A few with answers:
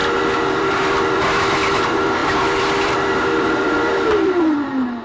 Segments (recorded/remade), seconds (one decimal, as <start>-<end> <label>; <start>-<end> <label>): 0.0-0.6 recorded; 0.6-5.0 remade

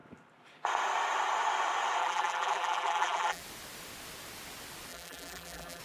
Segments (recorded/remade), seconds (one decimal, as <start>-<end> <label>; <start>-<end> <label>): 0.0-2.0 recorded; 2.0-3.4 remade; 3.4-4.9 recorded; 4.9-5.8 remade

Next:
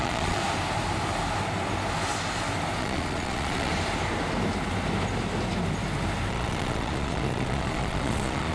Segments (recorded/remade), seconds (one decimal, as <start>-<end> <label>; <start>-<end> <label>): 0.0-0.4 remade; 0.4-2.8 recorded; 2.8-3.7 remade; 3.7-6.3 recorded; 6.3-8.5 remade

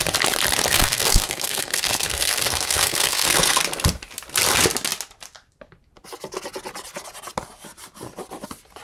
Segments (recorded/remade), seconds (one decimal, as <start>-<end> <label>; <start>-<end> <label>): 0.0-0.7 recorded; 0.7-3.6 remade; 3.6-8.8 recorded

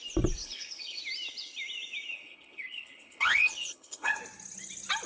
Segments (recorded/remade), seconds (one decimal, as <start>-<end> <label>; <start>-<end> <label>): 0.0-0.4 recorded; 0.4-1.0 remade; 1.0-2.1 recorded; 2.1-4.2 remade; 4.2-5.1 recorded

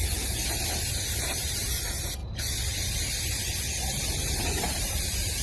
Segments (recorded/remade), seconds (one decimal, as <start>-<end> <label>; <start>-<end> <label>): 0.0-0.4 remade; 0.4-1.2 recorded; 1.2-2.2 remade; 2.2-4.4 recorded; 4.4-5.4 remade